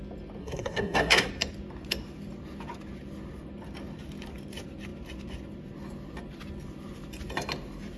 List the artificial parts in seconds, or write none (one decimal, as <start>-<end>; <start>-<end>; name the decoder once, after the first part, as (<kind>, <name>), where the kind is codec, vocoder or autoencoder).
0.4-1.3 (codec, SNAC)